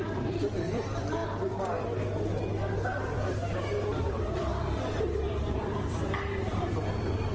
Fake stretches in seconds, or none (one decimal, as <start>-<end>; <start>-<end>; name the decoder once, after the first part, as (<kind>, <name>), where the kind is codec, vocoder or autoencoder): 0.0-1.2 (vocoder, BigVGAN v2); 3.0-3.4; 4.1-4.5; 5.5-7.3